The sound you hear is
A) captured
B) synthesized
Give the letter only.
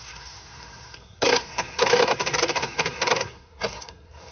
B